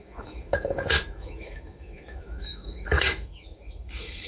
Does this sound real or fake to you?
fake